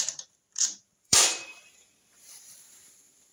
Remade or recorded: remade